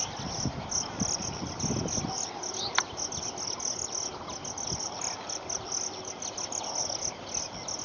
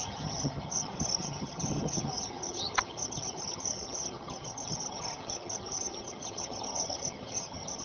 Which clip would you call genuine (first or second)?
first